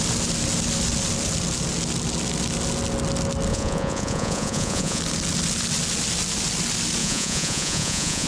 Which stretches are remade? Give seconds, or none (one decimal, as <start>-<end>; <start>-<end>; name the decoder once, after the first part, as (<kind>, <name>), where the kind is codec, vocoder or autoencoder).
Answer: 3.5-5.0 (vocoder, Vocos); 7.0-8.3